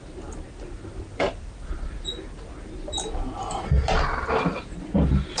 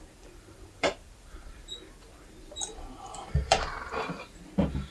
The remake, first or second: second